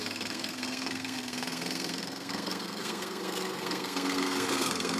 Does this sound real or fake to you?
fake